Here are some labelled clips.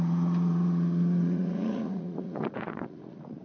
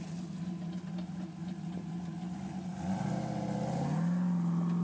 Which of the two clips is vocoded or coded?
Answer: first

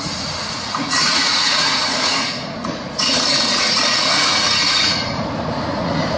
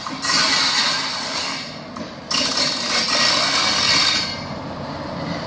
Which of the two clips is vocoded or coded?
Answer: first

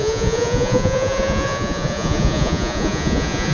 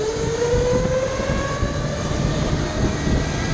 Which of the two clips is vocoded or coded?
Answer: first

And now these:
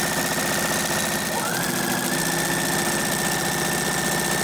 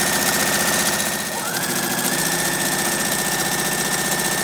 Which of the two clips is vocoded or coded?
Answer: second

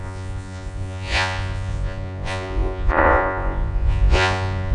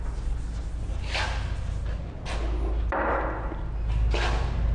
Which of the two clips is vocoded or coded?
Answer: first